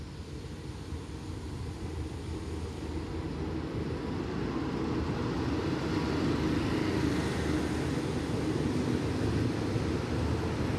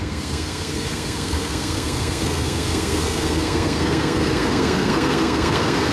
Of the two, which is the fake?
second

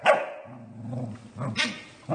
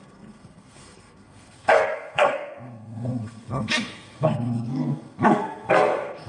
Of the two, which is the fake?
second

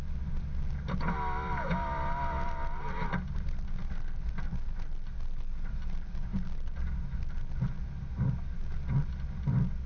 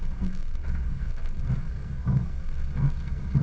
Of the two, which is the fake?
second